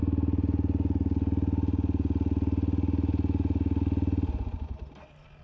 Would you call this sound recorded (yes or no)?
yes